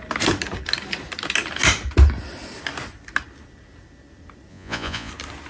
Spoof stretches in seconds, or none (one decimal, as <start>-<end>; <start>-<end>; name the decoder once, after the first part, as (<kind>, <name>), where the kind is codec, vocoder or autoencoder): 4.5-5.1 (vocoder, Vocos)